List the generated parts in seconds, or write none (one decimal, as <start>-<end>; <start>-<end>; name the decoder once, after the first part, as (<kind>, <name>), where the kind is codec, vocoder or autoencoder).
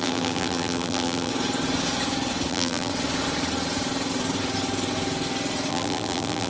0.0-1.3 (vocoder, BigVGAN v2); 2.5-2.9; 5.7-6.5